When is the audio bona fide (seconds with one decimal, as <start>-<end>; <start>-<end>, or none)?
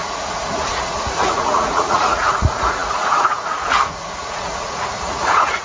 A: none